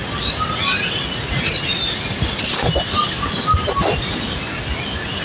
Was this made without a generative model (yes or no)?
yes